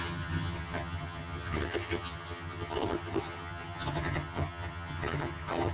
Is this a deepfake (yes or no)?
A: yes